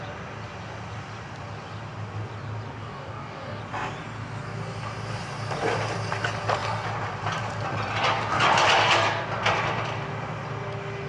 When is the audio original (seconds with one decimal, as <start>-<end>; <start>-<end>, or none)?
0.0-2.8; 3.6-11.1